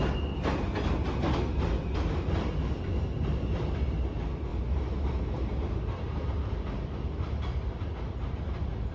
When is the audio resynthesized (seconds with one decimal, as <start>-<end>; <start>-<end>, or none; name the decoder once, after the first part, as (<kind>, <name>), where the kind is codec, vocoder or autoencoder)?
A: none